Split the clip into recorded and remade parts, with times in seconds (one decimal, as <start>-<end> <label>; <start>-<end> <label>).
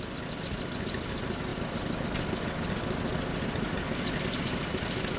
0.0-5.2 recorded